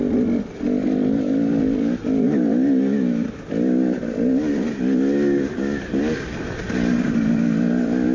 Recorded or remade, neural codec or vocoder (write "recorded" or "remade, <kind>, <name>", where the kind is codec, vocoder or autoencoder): recorded